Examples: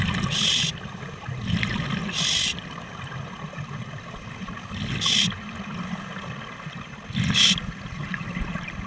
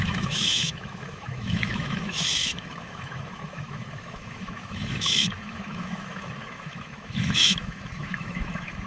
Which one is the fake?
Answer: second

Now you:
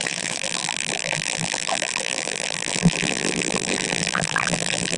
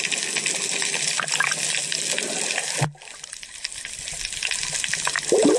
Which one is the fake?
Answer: first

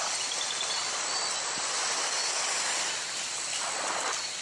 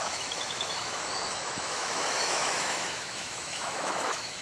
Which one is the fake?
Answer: second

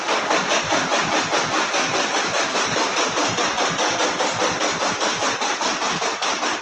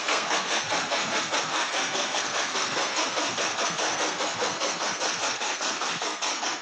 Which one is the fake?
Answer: second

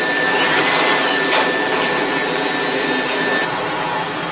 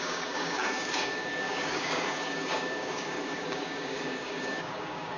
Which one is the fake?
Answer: second